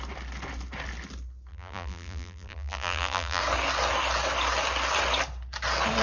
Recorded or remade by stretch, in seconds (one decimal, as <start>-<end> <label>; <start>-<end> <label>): 0.0-1.5 recorded; 1.5-3.4 remade; 3.4-6.0 recorded